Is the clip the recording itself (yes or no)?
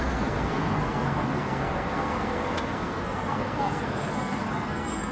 no